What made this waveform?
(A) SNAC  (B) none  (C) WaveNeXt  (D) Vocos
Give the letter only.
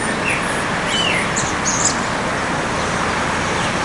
B